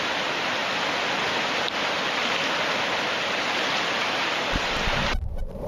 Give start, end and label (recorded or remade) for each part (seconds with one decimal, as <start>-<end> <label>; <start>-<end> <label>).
0.0-0.6 remade; 0.6-4.0 recorded; 4.0-5.7 remade